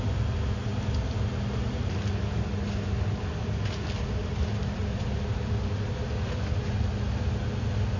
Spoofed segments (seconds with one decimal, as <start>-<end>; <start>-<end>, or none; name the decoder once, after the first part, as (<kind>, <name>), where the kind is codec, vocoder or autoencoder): 4.2-5.5 (vocoder, BigVGAN v2)